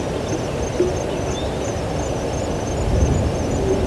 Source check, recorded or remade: recorded